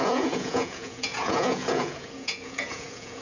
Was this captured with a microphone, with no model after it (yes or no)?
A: no